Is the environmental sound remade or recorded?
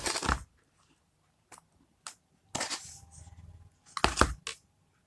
recorded